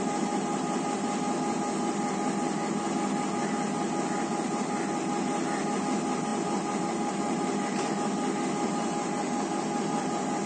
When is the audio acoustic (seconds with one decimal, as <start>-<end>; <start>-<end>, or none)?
0.0-10.5